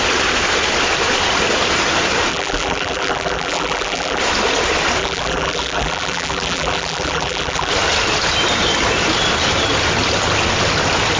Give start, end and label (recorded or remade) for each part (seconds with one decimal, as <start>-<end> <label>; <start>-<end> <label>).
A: 0.0-2.3 recorded; 2.3-4.2 remade; 4.2-5.0 recorded; 5.0-7.7 remade; 7.7-11.2 recorded

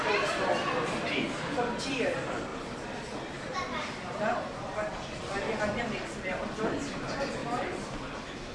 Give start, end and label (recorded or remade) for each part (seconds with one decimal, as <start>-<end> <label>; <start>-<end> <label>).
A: 0.0-8.5 remade

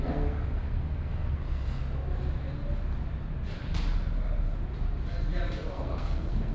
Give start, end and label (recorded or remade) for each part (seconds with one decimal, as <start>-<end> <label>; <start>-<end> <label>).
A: 0.0-1.8 remade; 1.8-5.7 recorded; 5.7-6.5 remade

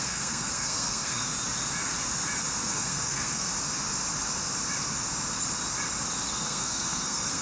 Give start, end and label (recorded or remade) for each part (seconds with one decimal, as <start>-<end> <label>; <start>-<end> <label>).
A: 0.0-1.3 remade; 1.3-2.7 recorded; 2.7-3.5 remade; 3.5-6.3 recorded; 6.3-7.4 remade

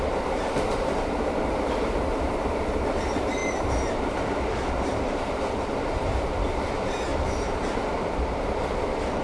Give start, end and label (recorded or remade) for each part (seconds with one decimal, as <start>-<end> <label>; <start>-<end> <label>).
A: 0.0-9.2 remade

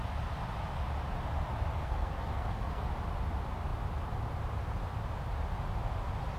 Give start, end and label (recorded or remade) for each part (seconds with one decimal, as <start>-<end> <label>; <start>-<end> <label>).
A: 0.0-1.7 recorded; 1.7-2.9 remade; 2.9-6.4 recorded

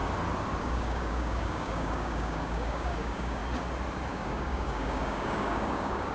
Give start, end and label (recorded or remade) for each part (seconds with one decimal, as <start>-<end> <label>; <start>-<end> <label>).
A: 0.0-0.6 recorded; 0.6-3.4 remade; 3.4-4.1 recorded; 4.1-6.1 remade